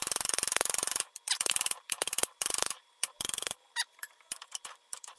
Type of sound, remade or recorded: remade